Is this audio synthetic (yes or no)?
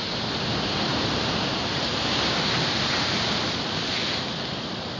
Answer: no